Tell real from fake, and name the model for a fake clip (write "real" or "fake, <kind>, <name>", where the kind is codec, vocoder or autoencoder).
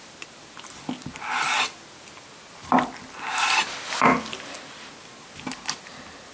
real